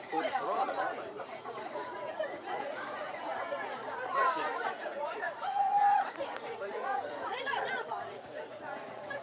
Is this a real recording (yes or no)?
no